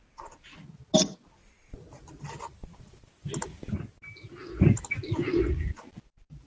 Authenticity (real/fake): real